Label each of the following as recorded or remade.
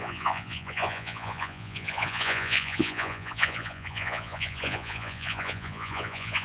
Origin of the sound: remade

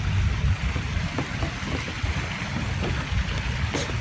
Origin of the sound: recorded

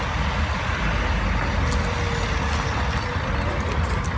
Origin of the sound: recorded